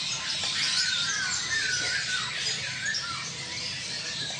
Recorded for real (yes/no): yes